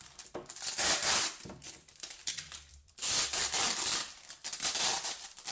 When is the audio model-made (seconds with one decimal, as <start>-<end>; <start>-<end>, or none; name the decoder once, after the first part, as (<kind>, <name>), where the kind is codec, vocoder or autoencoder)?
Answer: 0.0-5.5 (vocoder, BigVGAN v2)